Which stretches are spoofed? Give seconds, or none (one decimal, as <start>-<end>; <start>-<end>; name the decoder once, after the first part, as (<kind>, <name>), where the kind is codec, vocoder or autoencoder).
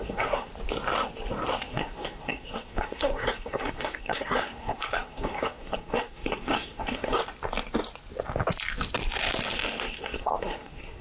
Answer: 0.0-0.5 (codec, SNAC); 1.7-7.2; 10.0-11.0